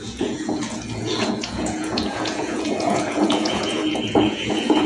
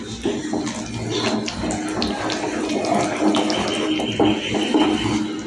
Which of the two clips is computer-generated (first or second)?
first